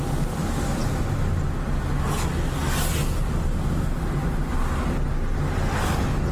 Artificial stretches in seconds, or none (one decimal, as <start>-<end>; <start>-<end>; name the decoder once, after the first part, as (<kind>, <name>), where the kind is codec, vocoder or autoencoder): none

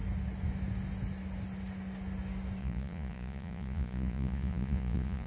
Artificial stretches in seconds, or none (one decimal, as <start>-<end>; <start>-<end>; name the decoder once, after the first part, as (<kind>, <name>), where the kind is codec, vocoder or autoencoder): 2.6-5.3 (vocoder, Vocos)